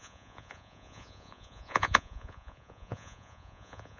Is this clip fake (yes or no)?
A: yes